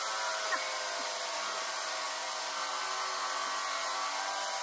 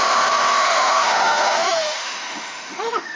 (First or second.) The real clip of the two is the first